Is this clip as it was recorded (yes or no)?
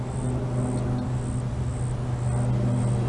yes